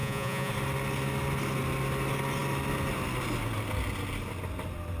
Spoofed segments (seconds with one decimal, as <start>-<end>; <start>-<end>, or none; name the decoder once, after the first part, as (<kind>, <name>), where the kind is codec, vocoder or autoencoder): 0.0-0.5 (vocoder, Vocos)